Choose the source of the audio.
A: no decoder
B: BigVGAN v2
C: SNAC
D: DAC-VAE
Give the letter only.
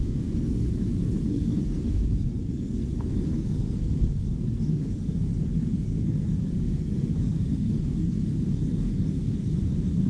C